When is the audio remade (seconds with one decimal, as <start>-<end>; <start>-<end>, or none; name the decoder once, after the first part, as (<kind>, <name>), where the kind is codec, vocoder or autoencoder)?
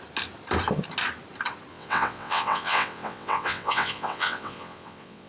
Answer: 1.7-5.3 (vocoder, WaveNeXt)